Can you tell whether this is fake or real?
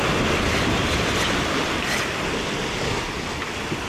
real